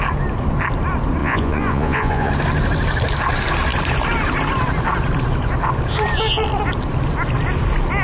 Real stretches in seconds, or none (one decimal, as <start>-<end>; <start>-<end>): 0.0-1.2; 2.3-8.0